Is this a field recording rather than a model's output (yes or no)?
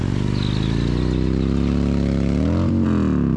yes